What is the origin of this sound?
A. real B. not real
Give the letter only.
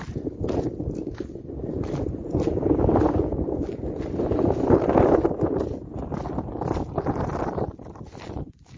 A